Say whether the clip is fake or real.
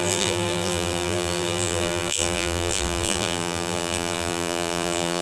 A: fake